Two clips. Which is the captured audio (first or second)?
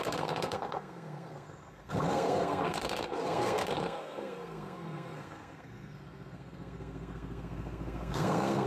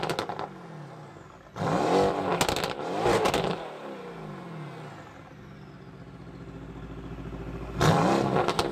second